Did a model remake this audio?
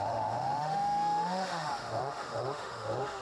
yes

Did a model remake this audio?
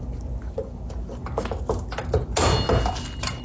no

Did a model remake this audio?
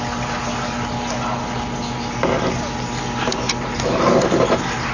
no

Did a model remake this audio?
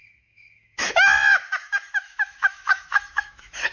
yes